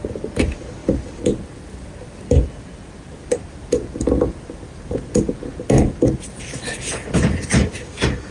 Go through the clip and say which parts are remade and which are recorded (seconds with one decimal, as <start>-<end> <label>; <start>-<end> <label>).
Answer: 0.0-0.8 recorded; 0.8-1.9 remade; 1.9-8.3 recorded